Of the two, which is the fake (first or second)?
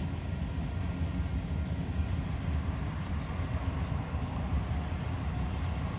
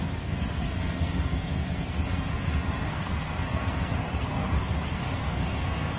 second